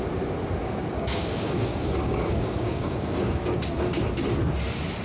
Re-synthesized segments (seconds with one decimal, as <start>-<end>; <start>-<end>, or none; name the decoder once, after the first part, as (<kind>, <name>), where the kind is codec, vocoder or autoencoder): 0.6-3.6 (codec, DAC)

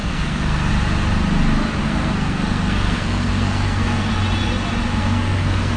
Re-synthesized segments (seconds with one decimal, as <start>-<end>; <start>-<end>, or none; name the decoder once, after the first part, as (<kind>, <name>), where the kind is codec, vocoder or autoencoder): 0.0-0.7 (codec, SNAC); 1.8-4.1; 5.0-5.8

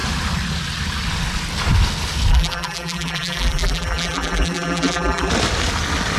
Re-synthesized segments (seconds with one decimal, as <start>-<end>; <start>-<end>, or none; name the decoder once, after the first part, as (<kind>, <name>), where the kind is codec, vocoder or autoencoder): 2.3-5.3 (vocoder, BigVGAN v2)

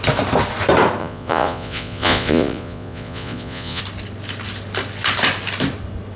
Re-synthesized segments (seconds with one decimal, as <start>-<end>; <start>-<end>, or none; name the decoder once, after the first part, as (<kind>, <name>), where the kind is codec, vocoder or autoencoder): 1.0-3.8 (vocoder, Vocos)

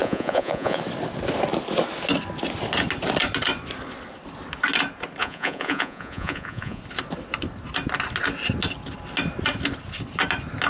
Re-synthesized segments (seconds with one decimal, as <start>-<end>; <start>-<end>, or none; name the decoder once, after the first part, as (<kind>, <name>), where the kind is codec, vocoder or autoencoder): 0.0-0.8 (vocoder, Vocos); 5.2-6.8

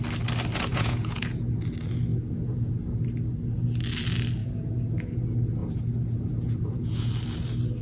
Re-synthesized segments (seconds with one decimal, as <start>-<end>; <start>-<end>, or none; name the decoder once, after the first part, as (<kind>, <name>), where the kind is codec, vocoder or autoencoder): 0.7-1.6 (vocoder, Vocos); 2.1-2.7; 4.4-5.1; 5.6-7.1

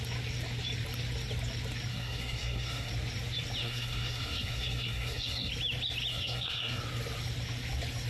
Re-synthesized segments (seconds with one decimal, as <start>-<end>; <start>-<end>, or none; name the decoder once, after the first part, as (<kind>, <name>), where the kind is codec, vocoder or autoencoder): 1.9-2.9 (codec, SNAC); 3.6-5.5; 6.1-6.8